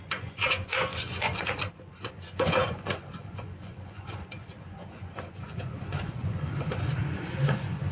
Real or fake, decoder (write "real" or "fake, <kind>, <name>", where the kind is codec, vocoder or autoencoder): fake, vocoder, Vocos